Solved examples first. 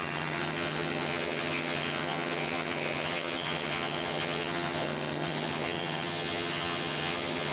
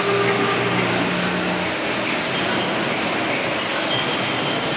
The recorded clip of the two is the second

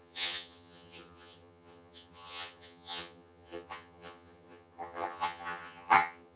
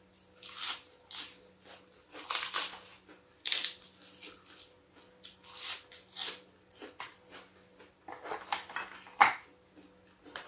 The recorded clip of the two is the second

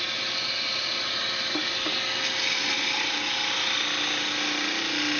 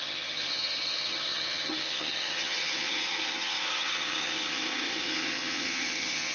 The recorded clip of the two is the first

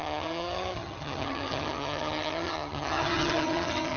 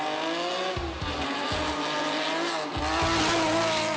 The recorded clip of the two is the second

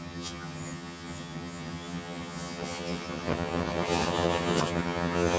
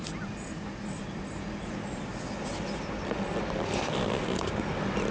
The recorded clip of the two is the second